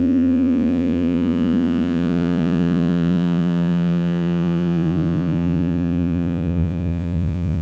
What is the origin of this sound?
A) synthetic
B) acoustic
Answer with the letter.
A